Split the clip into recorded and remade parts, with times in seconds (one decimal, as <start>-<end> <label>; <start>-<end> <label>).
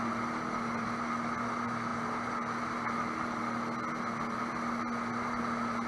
0.0-5.9 recorded